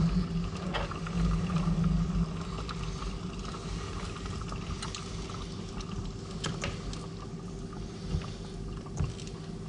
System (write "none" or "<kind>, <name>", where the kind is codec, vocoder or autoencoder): none